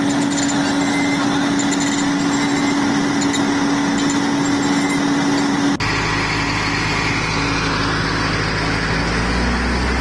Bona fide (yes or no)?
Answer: yes